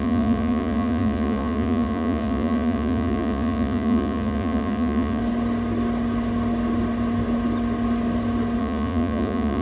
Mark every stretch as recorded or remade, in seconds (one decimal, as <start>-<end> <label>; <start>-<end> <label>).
0.0-5.2 remade; 5.2-8.6 recorded; 8.6-9.6 remade